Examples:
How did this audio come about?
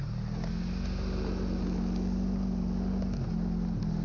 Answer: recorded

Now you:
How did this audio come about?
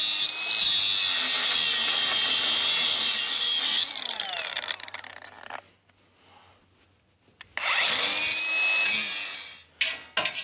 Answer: recorded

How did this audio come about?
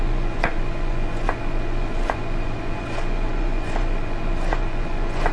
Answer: remade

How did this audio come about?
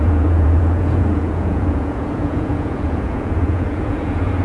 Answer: remade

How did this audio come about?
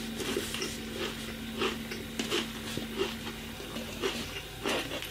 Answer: recorded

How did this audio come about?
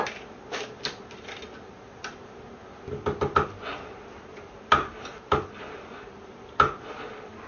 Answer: recorded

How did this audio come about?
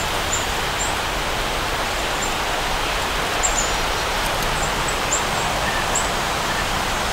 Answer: recorded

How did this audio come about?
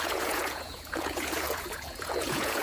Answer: remade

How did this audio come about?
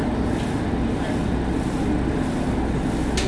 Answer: recorded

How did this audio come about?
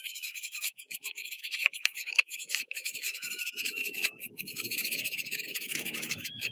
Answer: remade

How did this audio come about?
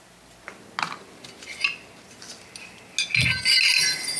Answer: recorded